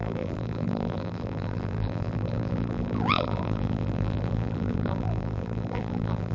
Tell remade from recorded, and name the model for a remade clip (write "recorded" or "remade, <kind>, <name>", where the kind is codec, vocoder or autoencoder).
remade, vocoder, BigVGAN v2